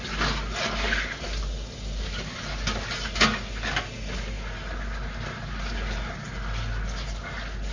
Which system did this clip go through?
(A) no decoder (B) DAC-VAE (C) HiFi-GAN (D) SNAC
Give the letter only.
A